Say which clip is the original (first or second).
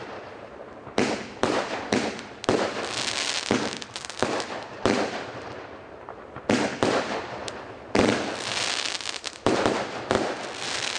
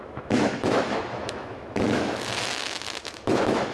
first